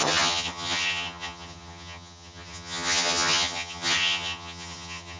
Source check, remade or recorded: remade